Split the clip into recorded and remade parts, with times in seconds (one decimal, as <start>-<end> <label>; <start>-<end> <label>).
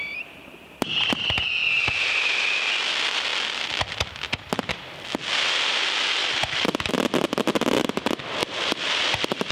0.0-1.6 recorded; 1.6-2.2 remade; 2.2-3.3 recorded; 3.3-3.9 remade; 3.9-6.2 recorded; 6.2-6.9 remade; 6.9-8.4 recorded; 8.4-9.5 remade